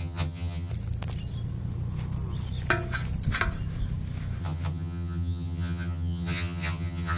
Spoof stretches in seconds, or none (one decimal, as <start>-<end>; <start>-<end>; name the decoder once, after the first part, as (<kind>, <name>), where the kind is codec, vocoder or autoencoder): 0.0-0.7 (vocoder, HiFi-GAN); 4.4-7.2